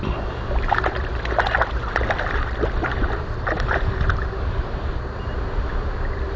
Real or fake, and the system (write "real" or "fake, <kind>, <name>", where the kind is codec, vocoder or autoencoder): fake, vocoder, BigVGAN v2